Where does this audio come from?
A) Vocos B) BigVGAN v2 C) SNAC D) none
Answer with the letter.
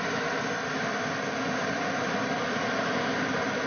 D